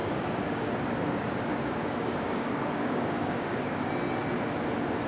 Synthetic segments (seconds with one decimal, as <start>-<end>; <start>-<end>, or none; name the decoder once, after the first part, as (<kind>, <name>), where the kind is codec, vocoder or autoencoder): 0.0-0.7 (codec, DAC); 1.5-3.9

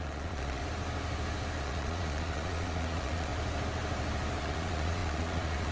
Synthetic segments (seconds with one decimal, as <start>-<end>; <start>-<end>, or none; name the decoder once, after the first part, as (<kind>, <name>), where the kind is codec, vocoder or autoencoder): 0.0-0.6 (vocoder, Vocos); 1.6-3.3; 4.4-5.7

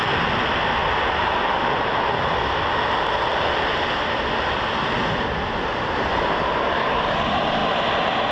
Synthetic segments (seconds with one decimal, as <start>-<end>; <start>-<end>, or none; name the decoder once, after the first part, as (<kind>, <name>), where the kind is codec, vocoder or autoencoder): none